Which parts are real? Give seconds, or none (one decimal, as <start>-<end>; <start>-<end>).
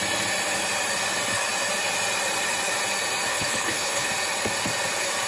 0.0-3.3; 4.1-5.3